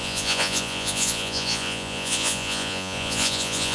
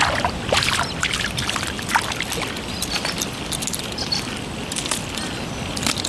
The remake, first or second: first